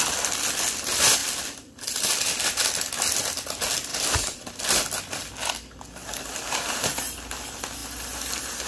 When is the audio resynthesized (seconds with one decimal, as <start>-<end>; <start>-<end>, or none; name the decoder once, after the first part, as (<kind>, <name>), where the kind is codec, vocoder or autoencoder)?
1.2-2.7 (vocoder, BigVGAN v2); 3.9-5.4; 7.8-8.7